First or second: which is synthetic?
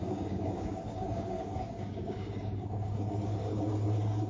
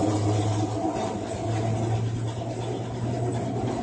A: first